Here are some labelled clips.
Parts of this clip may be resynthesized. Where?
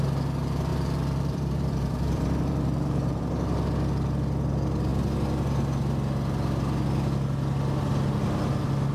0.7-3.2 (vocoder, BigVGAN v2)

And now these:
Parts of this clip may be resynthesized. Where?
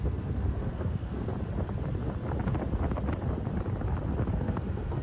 0.0-1.3 (codec, SNAC); 4.3-5.0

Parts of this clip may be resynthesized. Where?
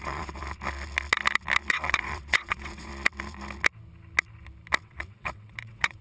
0.0-0.4 (vocoder, WaveNeXt); 1.7-2.9; 4.8-6.0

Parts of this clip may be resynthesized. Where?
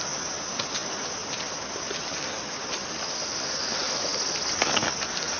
none